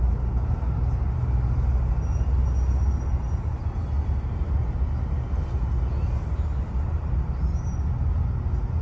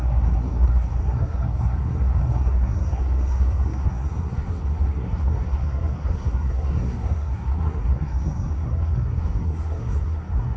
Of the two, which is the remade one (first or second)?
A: second